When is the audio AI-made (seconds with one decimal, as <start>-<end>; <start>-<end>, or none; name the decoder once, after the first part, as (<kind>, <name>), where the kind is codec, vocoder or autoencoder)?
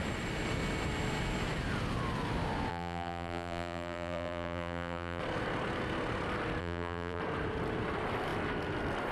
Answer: 2.7-5.2 (vocoder, BigVGAN v2); 6.6-7.2